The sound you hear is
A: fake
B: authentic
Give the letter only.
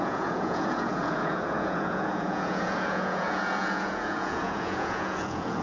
A